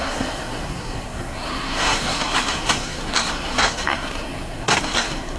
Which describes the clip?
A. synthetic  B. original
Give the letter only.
A